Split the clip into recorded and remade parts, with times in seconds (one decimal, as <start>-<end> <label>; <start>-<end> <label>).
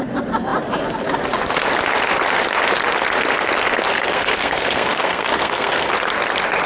0.0-3.9 recorded; 3.9-5.9 remade; 5.9-6.7 recorded